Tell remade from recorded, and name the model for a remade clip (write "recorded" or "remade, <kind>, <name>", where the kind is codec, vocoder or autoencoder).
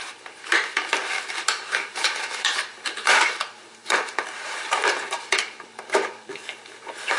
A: remade, vocoder, BigVGAN v2